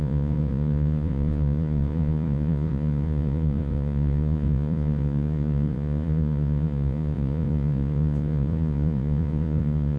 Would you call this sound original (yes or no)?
no